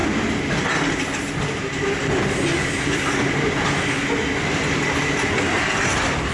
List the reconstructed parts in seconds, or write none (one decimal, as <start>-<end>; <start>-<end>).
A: none